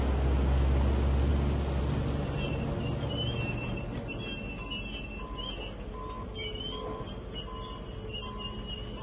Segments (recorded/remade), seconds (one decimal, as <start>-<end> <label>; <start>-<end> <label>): 0.0-9.0 recorded